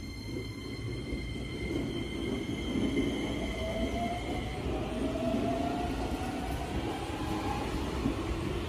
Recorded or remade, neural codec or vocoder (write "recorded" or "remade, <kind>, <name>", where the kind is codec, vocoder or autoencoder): recorded